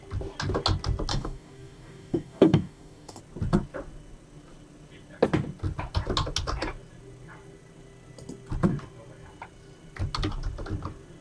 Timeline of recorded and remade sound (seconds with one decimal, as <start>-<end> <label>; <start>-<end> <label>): 0.0-1.1 recorded; 1.1-3.2 remade; 3.2-11.2 recorded